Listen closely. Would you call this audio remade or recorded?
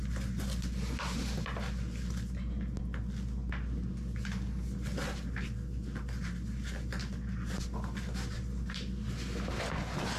recorded